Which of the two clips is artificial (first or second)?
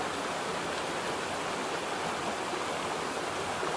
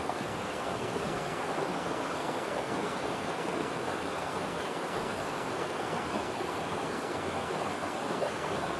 second